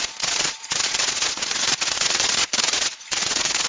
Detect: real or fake fake